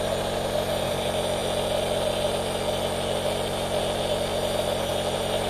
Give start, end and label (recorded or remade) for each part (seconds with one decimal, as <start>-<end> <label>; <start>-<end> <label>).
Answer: 0.0-4.3 recorded; 4.3-4.9 remade; 4.9-5.5 recorded